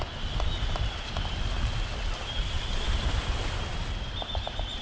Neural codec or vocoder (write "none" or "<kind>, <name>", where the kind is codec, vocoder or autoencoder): none